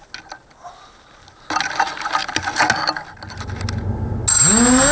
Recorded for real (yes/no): yes